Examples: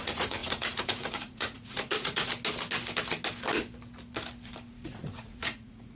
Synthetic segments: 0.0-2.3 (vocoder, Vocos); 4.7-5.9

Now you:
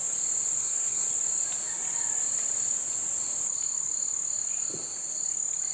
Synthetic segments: 0.6-1.1 (codec, SNAC)

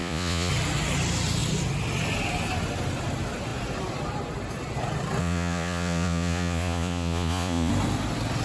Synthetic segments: 0.0-0.5 (vocoder, Vocos); 5.2-7.7

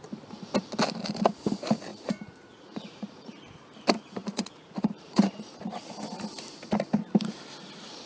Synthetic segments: 1.9-3.3 (vocoder, Vocos); 4.2-5.4

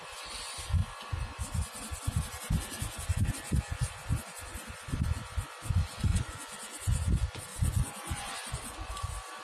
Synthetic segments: 6.1-7.1 (vocoder, Vocos); 7.5-9.0

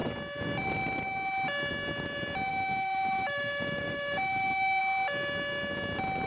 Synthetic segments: 2.5-4.8 (autoencoder, DAC-VAE)

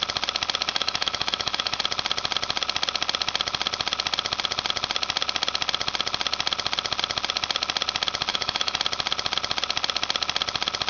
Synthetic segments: 0.7-1.8 (autoencoder, DAC-VAE); 8.3-8.8